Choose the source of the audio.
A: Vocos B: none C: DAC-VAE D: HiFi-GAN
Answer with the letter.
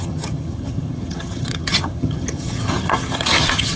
D